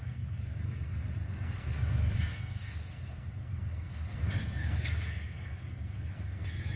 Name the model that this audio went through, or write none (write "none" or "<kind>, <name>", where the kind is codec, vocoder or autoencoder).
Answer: codec, SNAC